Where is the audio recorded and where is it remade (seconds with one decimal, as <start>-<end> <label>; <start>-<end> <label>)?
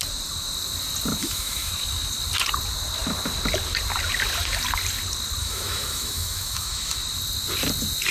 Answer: 0.0-1.2 recorded; 1.2-1.7 remade; 1.7-5.4 recorded; 5.4-7.0 remade; 7.0-8.1 recorded